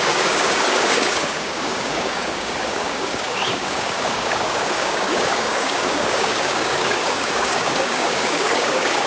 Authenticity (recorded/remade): remade